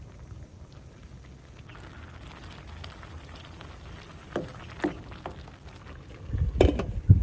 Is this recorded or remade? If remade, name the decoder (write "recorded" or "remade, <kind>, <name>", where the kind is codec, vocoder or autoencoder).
recorded